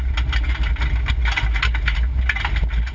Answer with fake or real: real